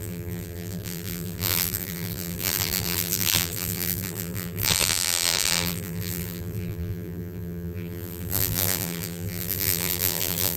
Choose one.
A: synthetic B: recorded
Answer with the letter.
A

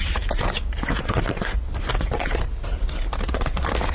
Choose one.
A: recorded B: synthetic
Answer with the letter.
B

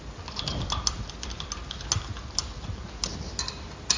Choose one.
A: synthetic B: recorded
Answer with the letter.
B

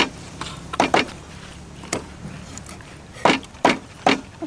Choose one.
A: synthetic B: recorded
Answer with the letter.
A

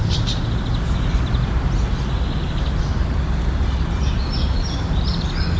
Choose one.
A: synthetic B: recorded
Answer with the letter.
B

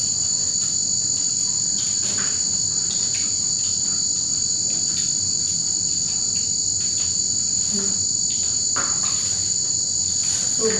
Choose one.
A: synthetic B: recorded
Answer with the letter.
B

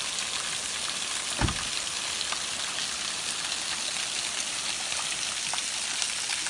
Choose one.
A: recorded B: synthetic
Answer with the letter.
A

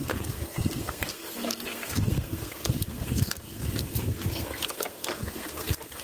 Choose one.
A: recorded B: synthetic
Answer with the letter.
B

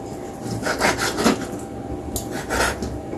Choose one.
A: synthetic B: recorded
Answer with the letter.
B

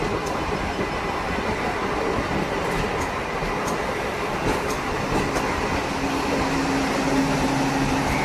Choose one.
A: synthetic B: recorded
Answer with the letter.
B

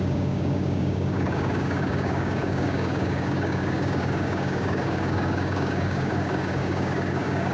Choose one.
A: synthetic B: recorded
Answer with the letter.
A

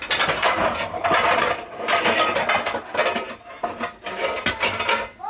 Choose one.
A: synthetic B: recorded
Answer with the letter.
B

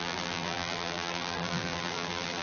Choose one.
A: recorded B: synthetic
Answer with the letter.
B